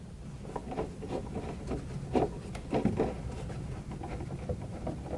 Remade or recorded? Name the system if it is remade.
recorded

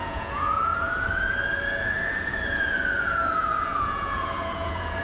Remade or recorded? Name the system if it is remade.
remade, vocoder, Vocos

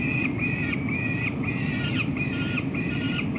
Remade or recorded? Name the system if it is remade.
recorded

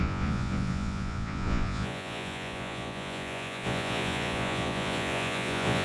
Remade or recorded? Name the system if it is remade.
remade, vocoder, Vocos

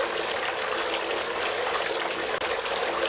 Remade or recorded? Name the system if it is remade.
recorded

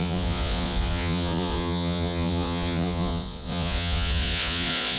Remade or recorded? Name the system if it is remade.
remade, vocoder, Vocos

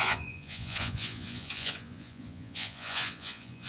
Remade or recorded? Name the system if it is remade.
remade, vocoder, Vocos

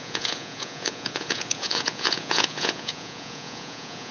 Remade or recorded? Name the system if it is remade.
remade, vocoder, Vocos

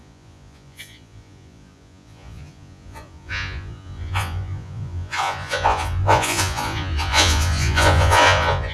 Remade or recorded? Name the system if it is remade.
remade, vocoder, Vocos